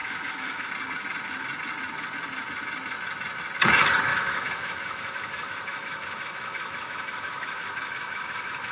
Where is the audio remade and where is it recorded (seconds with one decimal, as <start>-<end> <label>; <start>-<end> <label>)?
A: 0.0-0.7 remade; 0.7-4.1 recorded; 4.1-8.7 remade